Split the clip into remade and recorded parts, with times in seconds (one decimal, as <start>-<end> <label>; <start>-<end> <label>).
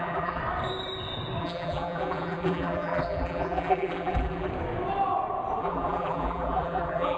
0.0-0.4 remade; 0.4-1.4 recorded; 1.4-4.5 remade; 4.5-5.6 recorded; 5.6-7.2 remade